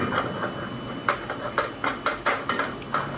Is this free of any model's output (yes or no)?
yes